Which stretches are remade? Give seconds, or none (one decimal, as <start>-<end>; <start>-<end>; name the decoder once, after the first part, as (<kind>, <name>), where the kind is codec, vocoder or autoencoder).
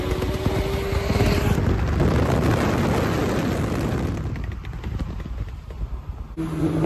none